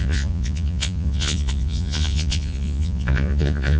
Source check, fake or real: fake